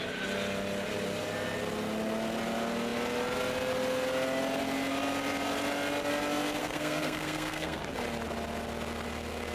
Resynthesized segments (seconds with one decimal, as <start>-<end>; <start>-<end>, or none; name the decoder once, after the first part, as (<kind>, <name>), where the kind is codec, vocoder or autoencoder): 6.6-7.8 (codec, SNAC)